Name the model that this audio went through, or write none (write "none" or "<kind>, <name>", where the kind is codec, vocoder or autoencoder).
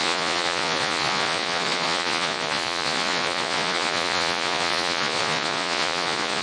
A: vocoder, Vocos